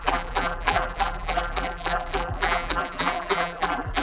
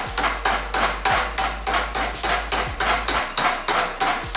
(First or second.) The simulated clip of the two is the first